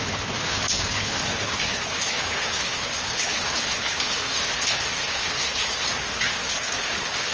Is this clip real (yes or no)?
no